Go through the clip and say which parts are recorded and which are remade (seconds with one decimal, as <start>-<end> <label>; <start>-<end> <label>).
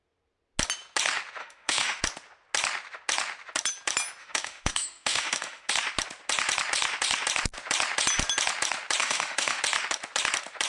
0.0-1.4 recorded; 1.4-2.0 remade; 2.0-4.2 recorded; 4.2-5.7 remade; 5.7-9.0 recorded; 9.0-9.6 remade; 9.6-10.7 recorded